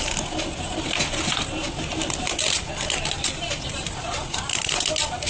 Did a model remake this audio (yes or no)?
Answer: no